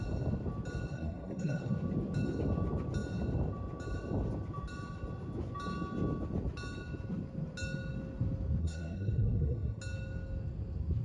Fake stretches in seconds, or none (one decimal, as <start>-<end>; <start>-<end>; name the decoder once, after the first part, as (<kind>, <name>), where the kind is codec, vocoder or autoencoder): 0.9-1.7 (codec, SNAC); 8.6-9.8